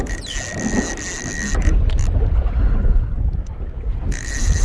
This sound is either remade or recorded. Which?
recorded